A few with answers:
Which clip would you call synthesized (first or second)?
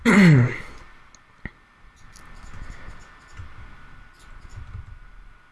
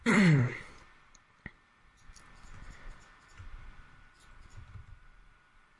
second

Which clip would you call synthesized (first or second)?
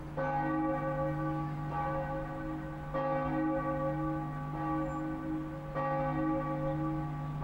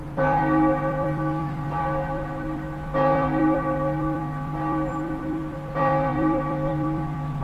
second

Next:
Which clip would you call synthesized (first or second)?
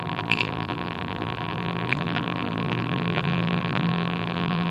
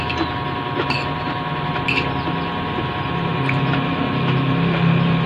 first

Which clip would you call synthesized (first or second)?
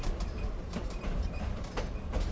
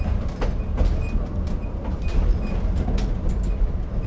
first